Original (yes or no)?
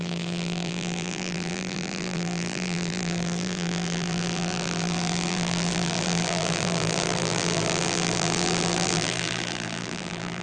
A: no